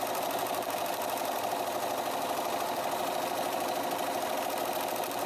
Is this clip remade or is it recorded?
recorded